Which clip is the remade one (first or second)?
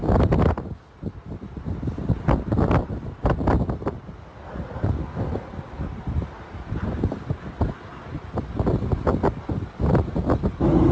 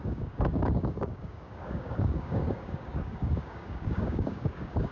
second